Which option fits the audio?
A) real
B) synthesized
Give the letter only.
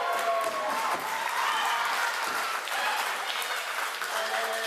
A